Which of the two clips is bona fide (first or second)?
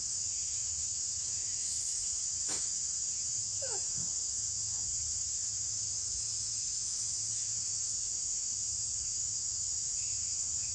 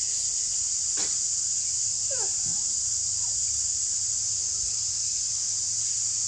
second